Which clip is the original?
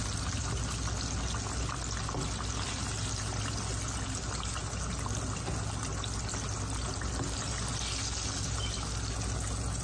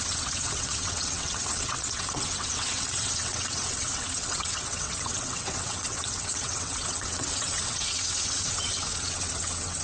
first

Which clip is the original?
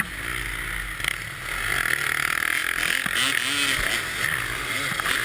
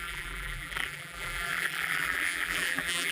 first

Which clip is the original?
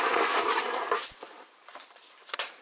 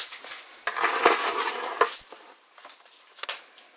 second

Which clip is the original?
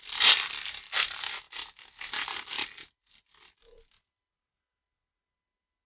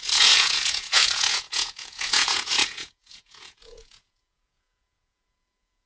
first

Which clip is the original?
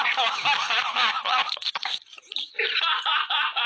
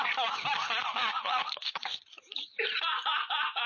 first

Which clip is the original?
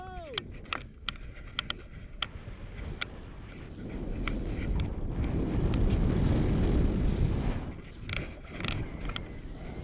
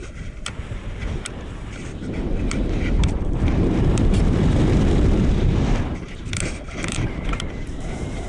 first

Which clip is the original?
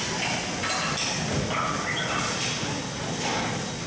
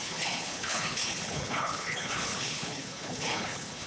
first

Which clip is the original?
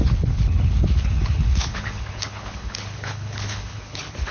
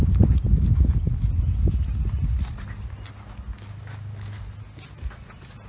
second